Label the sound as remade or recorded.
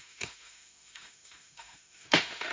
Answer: remade